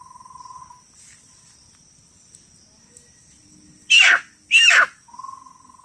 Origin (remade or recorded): recorded